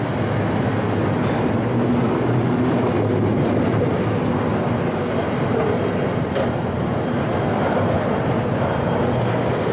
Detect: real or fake real